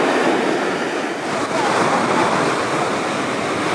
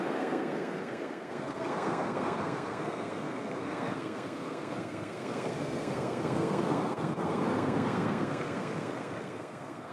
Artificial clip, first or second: second